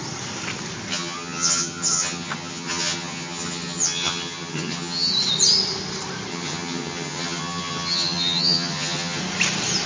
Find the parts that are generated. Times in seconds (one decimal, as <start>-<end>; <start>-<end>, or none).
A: 0.9-5.1; 6.3-9.2